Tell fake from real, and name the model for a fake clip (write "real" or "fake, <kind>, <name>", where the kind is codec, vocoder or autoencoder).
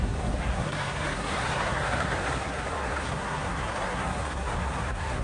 fake, codec, SNAC